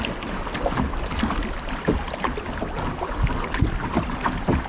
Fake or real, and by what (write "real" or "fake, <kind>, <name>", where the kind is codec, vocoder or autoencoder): real